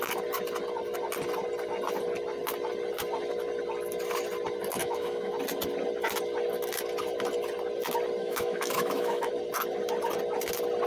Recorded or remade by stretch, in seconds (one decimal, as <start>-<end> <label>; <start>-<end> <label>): 0.0-4.8 recorded; 4.8-5.3 remade; 5.3-8.2 recorded; 8.2-9.3 remade; 9.3-10.9 recorded